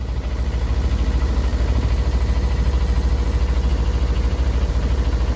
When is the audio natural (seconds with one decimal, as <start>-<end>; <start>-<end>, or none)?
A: 0.0-5.4